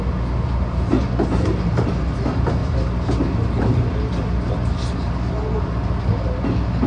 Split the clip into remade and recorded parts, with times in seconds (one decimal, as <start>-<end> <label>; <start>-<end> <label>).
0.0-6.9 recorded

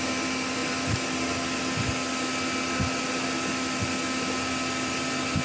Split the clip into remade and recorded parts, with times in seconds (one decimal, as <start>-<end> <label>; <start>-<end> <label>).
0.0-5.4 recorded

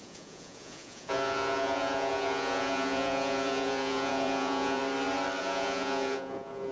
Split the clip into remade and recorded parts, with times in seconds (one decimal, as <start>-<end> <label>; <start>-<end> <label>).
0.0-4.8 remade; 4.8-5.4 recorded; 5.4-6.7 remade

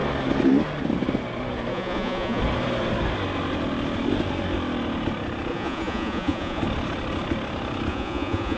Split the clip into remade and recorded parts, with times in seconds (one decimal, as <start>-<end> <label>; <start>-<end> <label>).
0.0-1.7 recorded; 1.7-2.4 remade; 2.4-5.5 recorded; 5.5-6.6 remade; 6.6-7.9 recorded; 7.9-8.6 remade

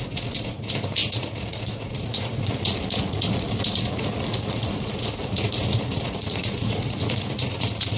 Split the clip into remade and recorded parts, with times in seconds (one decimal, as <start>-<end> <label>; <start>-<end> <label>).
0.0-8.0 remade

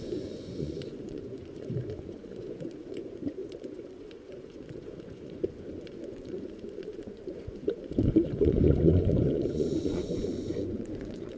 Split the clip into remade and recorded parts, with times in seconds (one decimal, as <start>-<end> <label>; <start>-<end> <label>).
0.0-11.4 remade

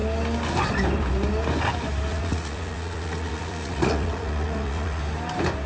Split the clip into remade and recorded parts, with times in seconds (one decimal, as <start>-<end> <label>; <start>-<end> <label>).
0.0-2.1 recorded; 2.1-5.0 remade; 5.0-5.7 recorded

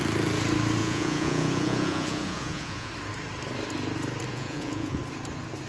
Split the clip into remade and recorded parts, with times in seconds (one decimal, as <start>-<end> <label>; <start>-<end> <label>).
0.0-0.8 recorded; 0.8-2.9 remade; 2.9-4.3 recorded; 4.3-5.0 remade; 5.0-5.7 recorded